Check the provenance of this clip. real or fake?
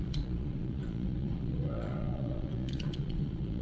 fake